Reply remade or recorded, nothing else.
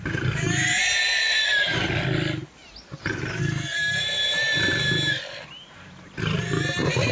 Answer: recorded